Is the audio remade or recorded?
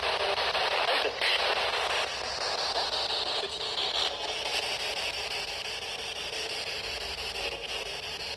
recorded